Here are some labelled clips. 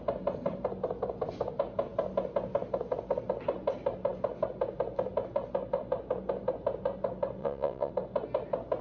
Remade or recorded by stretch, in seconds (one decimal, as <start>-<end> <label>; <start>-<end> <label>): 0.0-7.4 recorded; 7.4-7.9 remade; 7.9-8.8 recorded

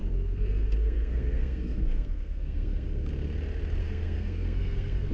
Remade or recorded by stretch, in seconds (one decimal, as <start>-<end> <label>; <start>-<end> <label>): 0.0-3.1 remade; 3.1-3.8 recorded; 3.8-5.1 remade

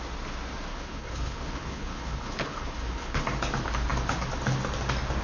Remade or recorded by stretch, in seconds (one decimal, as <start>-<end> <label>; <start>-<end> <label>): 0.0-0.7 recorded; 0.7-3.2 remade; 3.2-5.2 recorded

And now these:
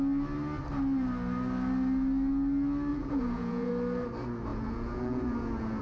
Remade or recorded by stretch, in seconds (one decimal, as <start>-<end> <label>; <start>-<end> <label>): 0.0-2.9 recorded; 2.9-3.7 remade; 3.7-4.5 recorded; 4.5-5.8 remade

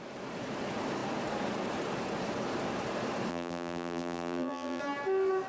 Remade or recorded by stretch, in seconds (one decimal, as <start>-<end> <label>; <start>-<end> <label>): 0.0-3.3 recorded; 3.3-4.8 remade; 4.8-5.5 recorded

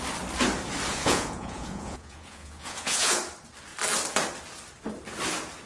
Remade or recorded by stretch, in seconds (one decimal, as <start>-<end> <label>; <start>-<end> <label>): 0.0-0.9 recorded; 0.9-3.2 remade; 3.2-5.7 recorded

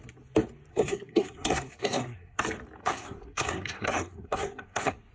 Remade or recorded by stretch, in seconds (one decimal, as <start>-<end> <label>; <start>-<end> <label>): 0.0-0.7 recorded; 0.7-2.4 remade; 2.4-2.8 recorded; 2.8-5.1 remade

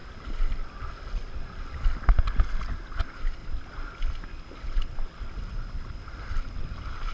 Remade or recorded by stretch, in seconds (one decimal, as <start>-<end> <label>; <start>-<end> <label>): 0.0-3.4 remade; 3.4-5.4 recorded; 5.4-7.1 remade